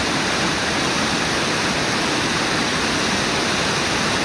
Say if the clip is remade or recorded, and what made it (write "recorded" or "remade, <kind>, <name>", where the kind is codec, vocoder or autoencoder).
recorded